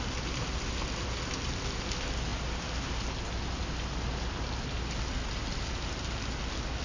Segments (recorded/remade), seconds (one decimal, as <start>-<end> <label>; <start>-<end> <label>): 0.0-6.8 recorded

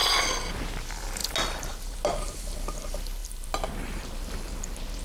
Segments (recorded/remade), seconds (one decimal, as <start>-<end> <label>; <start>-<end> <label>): 0.0-5.0 recorded

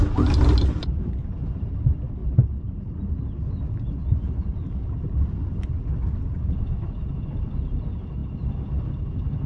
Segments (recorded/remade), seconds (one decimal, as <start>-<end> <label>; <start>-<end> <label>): 0.0-0.8 recorded; 0.8-1.8 remade; 1.8-2.2 recorded; 2.2-3.5 remade; 3.5-9.5 recorded

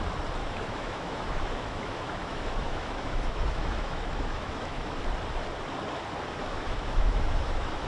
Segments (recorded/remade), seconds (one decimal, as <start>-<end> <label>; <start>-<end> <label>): 0.0-0.4 recorded; 0.4-5.0 remade; 5.0-6.4 recorded; 6.4-7.9 remade

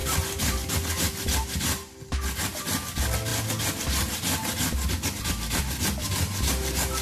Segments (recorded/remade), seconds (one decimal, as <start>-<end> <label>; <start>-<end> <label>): 0.0-0.7 remade; 0.7-7.0 recorded

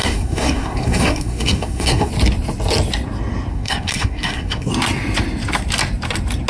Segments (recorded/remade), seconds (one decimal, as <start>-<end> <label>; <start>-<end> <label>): 0.0-2.1 remade; 2.1-3.5 recorded; 3.5-4.7 remade; 4.7-6.5 recorded

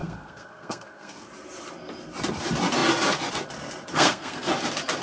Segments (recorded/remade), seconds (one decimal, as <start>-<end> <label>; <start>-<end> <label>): 0.0-1.3 remade; 1.3-3.9 recorded; 3.9-4.5 remade; 4.5-5.0 recorded